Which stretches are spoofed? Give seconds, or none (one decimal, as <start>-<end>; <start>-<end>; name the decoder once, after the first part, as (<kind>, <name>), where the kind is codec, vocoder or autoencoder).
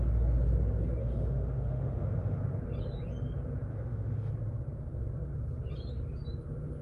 1.0-2.4 (autoencoder, DAC-VAE); 3.7-4.3